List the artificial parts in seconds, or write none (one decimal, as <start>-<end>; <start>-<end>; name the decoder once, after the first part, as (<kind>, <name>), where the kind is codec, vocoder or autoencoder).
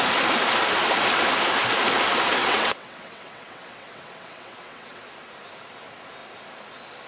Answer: 2.4-5.0 (vocoder, WaveNeXt)